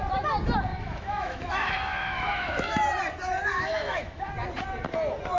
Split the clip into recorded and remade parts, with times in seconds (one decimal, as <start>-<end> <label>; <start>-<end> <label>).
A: 0.0-0.7 recorded; 0.7-3.0 remade; 3.0-3.5 recorded; 3.5-4.3 remade; 4.3-5.4 recorded